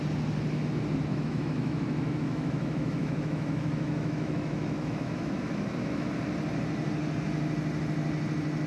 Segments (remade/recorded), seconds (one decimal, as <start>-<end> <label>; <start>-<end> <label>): 0.0-1.1 recorded; 1.1-6.1 remade; 6.1-8.7 recorded